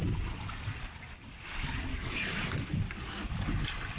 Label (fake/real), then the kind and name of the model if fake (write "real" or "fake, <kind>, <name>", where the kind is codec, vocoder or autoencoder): real